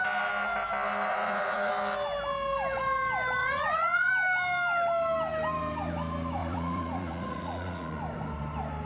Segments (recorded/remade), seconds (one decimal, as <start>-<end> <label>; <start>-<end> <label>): 0.0-1.1 recorded; 1.1-1.7 remade; 1.7-3.4 recorded; 3.4-4.1 remade; 4.1-6.4 recorded; 6.4-8.0 remade; 8.0-8.9 recorded